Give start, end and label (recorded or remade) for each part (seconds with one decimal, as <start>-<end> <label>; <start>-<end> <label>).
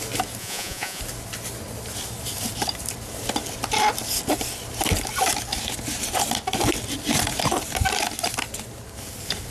0.0-0.4 recorded; 0.4-1.0 remade; 1.0-9.5 recorded